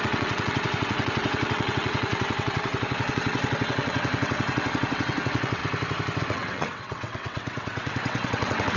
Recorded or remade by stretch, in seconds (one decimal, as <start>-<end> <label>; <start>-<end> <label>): 0.0-5.6 remade; 5.6-6.2 recorded; 6.2-8.8 remade